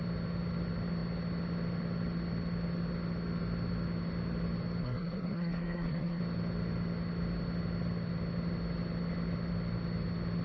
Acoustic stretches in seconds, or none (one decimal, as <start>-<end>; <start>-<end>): 0.0-4.8; 6.2-10.4